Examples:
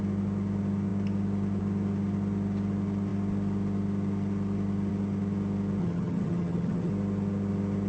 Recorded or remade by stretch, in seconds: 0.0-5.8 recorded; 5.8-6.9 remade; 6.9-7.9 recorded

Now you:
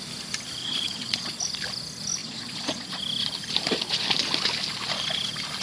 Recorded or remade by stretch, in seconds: 0.0-0.6 recorded; 0.6-1.4 remade; 1.4-2.2 recorded; 2.2-3.0 remade; 3.0-5.6 recorded

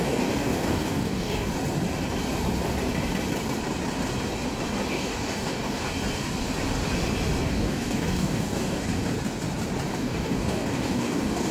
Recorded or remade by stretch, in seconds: 0.0-1.5 remade; 1.5-4.9 recorded; 4.9-5.8 remade; 5.8-7.4 recorded; 7.4-9.1 remade; 9.1-9.9 recorded; 9.9-11.5 remade

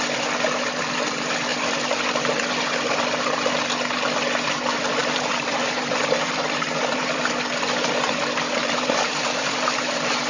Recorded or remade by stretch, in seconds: 0.0-5.0 recorded; 5.0-7.3 remade; 7.3-8.6 recorded; 8.6-10.3 remade

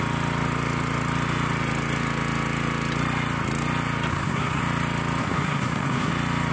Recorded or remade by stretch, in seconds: 0.0-4.1 recorded; 4.1-4.6 remade; 4.6-5.2 recorded; 5.2-6.1 remade; 6.1-6.5 recorded

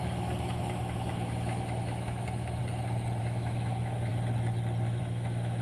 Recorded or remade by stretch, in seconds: 0.0-2.6 remade; 2.6-3.2 recorded; 3.2-4.1 remade; 4.1-5.0 recorded; 5.0-5.6 remade

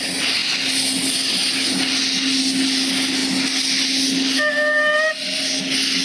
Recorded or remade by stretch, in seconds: 0.0-6.0 recorded